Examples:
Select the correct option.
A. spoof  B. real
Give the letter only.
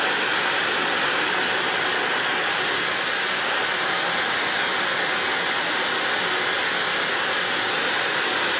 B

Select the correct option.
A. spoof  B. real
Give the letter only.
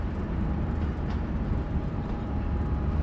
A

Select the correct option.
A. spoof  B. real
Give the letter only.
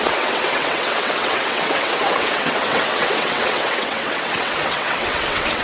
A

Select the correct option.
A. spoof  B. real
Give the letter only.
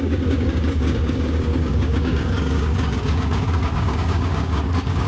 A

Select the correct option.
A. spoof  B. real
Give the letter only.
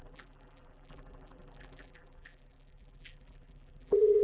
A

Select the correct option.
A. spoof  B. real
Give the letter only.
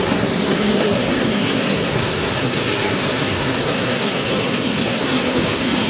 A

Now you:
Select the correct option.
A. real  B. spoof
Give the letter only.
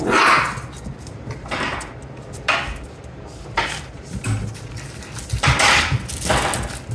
A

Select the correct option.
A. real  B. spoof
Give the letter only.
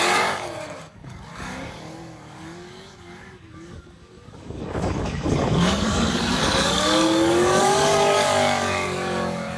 B